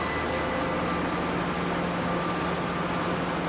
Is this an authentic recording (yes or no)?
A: yes